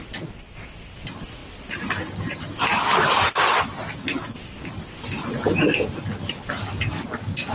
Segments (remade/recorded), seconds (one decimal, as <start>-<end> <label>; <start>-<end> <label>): 0.0-7.5 recorded